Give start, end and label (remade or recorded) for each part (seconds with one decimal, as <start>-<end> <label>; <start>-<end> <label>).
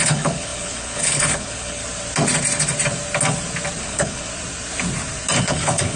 0.0-1.8 remade; 1.8-3.8 recorded; 3.8-4.3 remade; 4.3-5.4 recorded; 5.4-6.0 remade